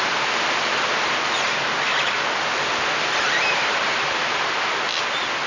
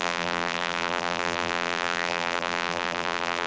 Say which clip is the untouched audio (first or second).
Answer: first